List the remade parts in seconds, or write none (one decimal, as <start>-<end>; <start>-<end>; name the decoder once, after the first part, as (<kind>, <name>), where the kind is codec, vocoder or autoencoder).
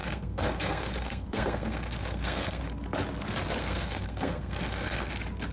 0.0-2.6 (codec, SNAC); 3.6-5.1